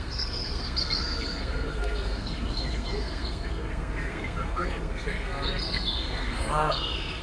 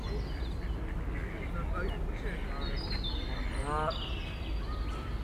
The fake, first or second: first